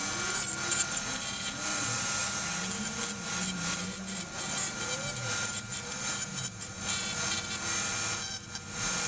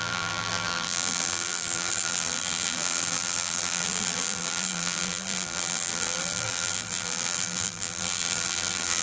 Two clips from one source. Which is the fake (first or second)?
second